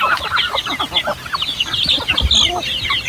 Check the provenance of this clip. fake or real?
real